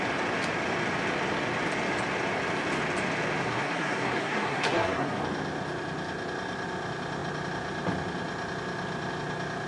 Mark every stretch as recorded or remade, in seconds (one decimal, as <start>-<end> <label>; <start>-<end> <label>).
0.0-3.4 recorded; 3.4-5.2 remade; 5.2-9.7 recorded